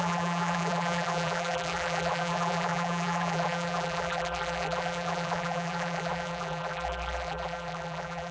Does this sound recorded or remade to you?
remade